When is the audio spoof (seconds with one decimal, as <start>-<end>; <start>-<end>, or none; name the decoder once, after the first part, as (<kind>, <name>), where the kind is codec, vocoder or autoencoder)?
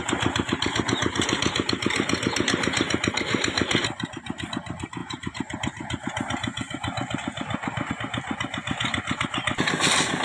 none